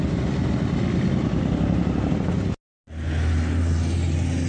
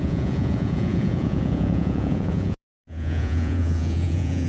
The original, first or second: first